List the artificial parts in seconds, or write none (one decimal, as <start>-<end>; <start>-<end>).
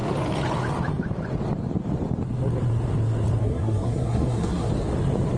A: 3.4-4.7